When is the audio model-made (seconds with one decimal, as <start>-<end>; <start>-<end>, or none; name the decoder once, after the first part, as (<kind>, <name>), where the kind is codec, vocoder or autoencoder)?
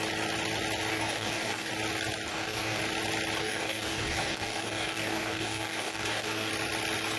0.9-1.7 (codec, DAC); 2.3-2.8; 3.4-6.5